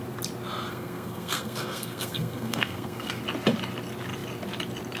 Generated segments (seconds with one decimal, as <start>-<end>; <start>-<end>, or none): 0.7-3.2